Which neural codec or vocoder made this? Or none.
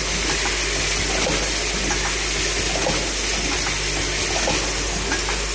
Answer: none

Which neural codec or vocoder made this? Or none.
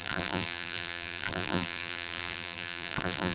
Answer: vocoder, BigVGAN v2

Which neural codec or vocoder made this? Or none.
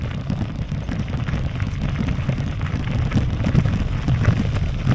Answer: none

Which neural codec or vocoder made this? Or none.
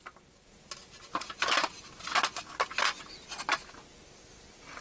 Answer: none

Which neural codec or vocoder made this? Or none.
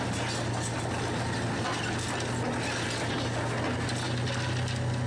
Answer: none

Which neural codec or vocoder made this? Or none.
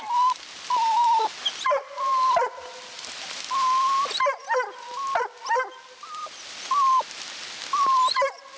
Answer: none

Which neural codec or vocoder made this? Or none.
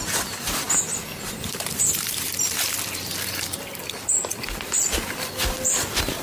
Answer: vocoder, BigVGAN v2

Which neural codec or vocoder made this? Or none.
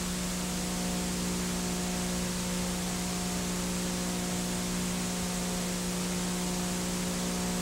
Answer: none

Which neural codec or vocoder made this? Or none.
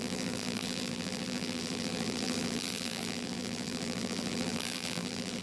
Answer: vocoder, BigVGAN v2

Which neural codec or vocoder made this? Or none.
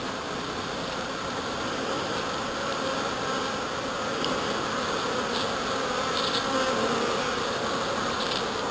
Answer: none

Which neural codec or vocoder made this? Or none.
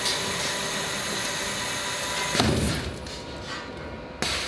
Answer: none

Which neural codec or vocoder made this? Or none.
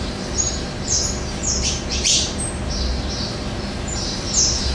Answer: vocoder, BigVGAN v2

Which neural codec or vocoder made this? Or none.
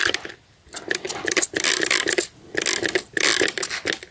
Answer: none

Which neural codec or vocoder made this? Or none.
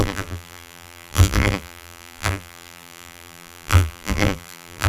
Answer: vocoder, BigVGAN v2